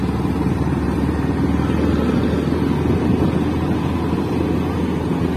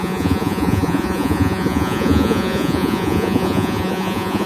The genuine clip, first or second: first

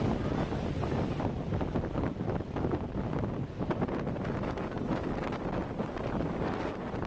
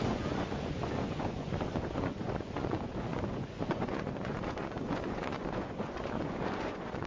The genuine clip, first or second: first